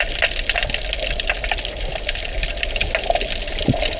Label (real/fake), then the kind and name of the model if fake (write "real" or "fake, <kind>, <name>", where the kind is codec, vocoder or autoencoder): real